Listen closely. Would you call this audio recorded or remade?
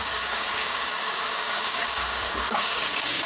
remade